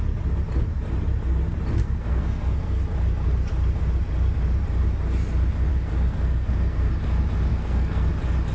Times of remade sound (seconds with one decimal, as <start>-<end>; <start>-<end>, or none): 1.8-2.8; 5.7-6.9; 7.5-8.1

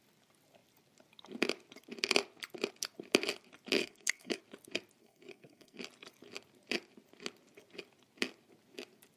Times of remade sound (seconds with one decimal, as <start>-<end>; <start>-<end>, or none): 3.8-4.4; 5.0-5.8

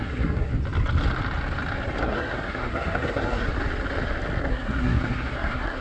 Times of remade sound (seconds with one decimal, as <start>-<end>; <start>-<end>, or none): 0.0-0.5; 2.0-3.5; 4.5-5.8

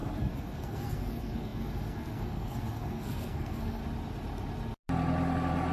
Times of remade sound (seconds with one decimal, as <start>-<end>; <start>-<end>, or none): 0.0-3.8